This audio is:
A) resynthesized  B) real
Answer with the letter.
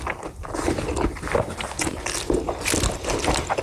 B